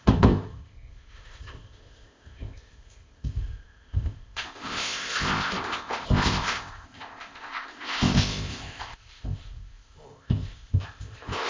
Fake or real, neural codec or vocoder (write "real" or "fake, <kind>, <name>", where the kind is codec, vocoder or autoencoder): fake, codec, ZipCodec